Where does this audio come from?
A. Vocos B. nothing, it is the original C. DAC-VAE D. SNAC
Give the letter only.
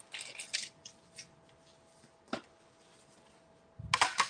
B